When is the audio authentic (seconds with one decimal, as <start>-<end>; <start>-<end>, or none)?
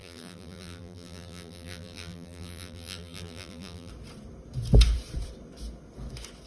3.9-6.5